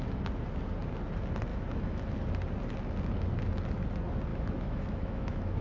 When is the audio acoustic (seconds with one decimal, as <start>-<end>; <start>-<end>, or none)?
0.0-1.5; 2.0-4.3